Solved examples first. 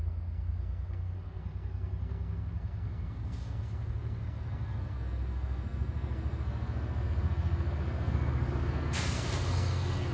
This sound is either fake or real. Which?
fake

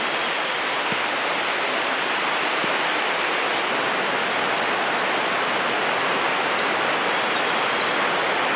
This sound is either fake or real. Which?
real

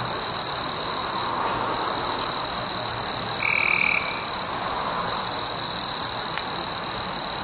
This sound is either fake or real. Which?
real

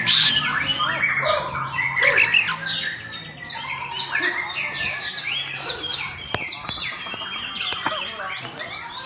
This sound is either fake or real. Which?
real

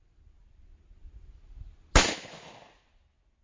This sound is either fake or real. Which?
real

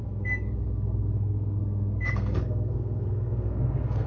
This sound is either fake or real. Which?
fake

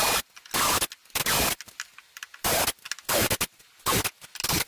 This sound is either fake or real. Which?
real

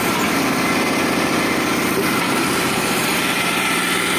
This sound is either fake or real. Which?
fake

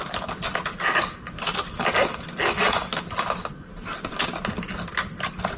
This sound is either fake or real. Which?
real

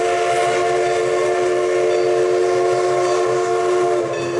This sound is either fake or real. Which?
real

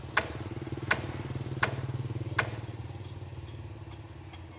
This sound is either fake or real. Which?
real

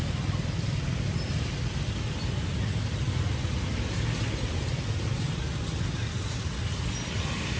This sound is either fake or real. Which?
real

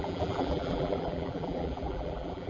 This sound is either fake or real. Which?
fake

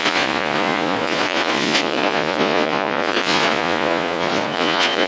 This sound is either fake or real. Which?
fake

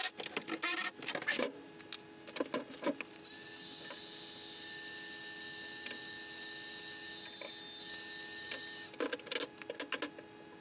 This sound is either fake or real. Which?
real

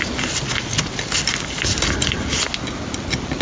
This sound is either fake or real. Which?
real